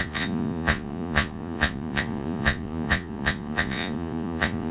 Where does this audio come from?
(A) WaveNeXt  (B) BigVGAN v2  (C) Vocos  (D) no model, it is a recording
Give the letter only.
C